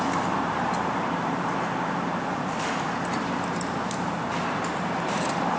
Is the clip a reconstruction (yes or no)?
yes